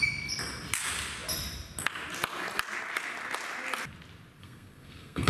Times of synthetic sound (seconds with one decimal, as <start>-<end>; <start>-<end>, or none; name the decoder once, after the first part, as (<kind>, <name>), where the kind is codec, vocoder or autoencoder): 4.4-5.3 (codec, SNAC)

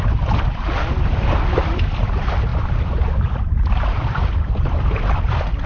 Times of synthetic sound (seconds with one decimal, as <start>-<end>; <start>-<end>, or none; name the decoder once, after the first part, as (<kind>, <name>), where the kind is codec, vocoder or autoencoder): 2.5-5.3 (vocoder, BigVGAN v2)

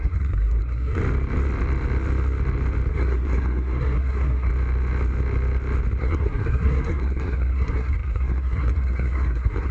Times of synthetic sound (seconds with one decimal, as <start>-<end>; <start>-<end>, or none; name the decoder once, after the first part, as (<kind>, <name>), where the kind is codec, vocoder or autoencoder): 0.0-1.0 (codec, SNAC); 2.9-4.5; 6.0-9.7